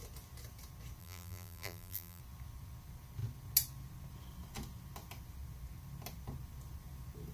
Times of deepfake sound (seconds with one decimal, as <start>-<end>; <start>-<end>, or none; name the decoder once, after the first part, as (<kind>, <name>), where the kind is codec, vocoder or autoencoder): 1.0-2.2 (vocoder, BigVGAN v2)